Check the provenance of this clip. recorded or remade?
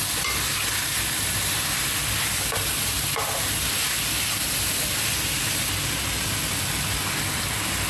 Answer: recorded